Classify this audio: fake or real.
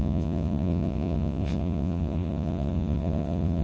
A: fake